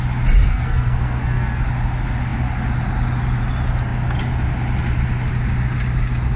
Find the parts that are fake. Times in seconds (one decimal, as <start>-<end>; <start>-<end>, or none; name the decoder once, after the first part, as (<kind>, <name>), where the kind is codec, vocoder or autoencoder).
0.5-1.6 (codec, SNAC)

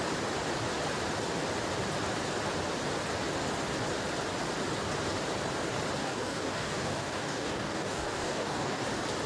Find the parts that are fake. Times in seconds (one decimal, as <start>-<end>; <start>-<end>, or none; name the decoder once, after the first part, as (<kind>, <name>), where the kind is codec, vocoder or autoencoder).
6.0-8.8 (codec, DAC)

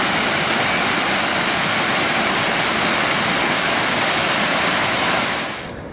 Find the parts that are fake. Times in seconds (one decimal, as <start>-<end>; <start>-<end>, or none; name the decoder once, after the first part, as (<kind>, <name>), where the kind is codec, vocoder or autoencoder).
1.3-1.8 (codec, DAC); 3.4-4.3

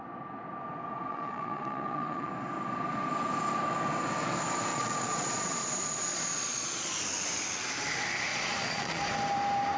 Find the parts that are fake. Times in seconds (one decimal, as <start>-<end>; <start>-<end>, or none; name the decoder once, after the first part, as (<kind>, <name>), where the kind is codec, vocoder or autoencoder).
1.1-2.3 (vocoder, Vocos); 4.7-6.9; 8.3-9.0

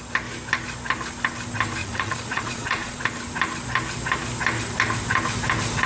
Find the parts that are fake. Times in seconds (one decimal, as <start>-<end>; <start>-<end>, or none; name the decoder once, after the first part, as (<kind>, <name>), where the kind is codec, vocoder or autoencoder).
1.8-3.0 (vocoder, Vocos)

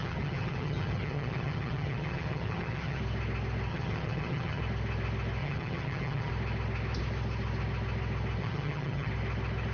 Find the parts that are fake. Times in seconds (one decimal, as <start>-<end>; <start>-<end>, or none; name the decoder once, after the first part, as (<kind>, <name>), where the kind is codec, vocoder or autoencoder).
0.0-3.0 (vocoder, HiFi-GAN); 3.7-4.6; 5.4-6.3; 8.4-9.1